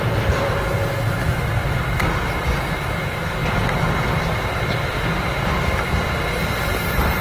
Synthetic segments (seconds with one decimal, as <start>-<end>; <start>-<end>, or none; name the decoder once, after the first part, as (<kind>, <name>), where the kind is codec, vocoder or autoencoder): none